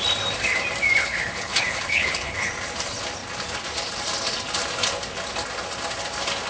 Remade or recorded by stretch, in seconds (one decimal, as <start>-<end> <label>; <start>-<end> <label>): 0.0-1.0 recorded; 1.0-2.5 remade; 2.5-6.5 recorded